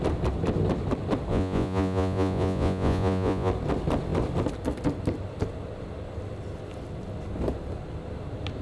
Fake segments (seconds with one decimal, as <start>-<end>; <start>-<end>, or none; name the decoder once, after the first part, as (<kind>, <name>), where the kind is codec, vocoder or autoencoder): 1.3-3.5 (vocoder, Vocos)